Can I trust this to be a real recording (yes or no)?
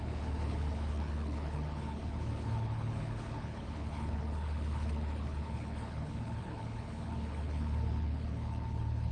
no